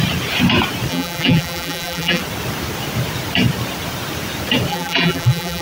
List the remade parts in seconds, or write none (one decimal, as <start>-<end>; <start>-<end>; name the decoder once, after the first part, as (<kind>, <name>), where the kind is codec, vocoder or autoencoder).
0.9-2.2 (vocoder, BigVGAN v2); 4.7-5.6